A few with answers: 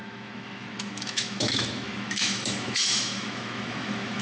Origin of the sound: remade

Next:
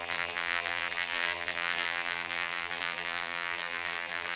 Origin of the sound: remade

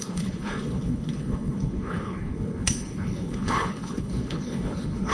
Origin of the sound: remade